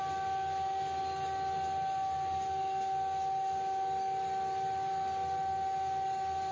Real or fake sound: real